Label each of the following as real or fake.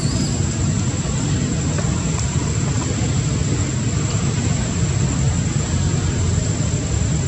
real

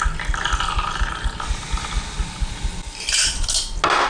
real